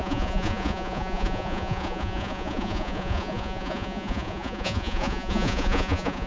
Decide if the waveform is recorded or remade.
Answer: remade